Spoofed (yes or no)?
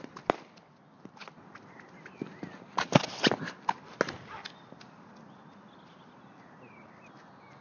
no